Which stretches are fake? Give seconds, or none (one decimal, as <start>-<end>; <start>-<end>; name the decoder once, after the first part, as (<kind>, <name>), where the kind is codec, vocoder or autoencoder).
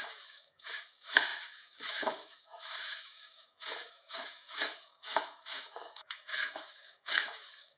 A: 0.0-7.8 (autoencoder, DAC-VAE)